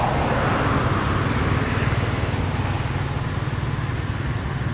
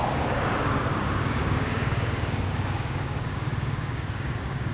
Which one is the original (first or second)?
first